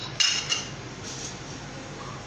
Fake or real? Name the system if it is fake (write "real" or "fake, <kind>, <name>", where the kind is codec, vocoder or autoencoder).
real